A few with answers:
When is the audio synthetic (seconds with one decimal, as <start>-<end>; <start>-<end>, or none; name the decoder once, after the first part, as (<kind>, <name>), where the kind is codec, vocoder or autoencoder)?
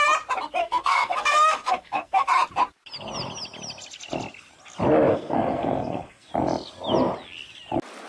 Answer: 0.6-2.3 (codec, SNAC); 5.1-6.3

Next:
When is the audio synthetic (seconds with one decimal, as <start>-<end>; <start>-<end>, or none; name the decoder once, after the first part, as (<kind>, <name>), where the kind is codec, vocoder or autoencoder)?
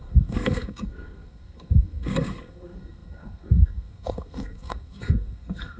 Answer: 0.0-5.8 (codec, SNAC)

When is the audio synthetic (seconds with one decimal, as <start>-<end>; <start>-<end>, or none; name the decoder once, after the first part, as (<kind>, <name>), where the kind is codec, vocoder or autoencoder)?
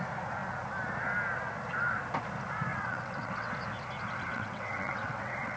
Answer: 2.7-3.5 (vocoder, WaveNeXt); 4.3-5.6